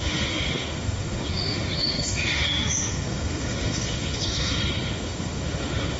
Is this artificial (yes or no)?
yes